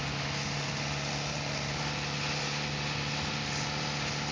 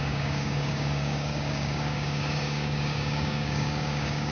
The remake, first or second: second